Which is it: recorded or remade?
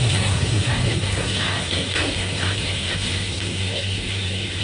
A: remade